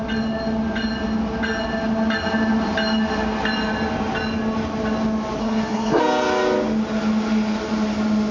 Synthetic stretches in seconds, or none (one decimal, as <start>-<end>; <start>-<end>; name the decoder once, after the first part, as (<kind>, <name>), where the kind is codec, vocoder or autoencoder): 5.4-6.0 (codec, SNAC)